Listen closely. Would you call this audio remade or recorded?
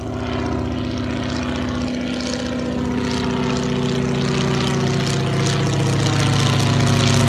recorded